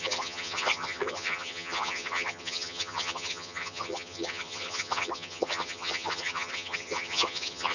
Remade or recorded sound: remade